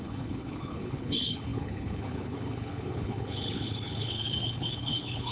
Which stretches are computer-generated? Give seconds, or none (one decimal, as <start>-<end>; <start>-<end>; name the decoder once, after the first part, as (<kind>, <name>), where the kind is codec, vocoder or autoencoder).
0.0-5.3 (codec, HILCodec)